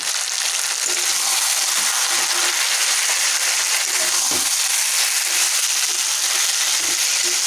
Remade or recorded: recorded